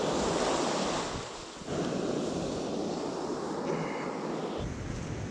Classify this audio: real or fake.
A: real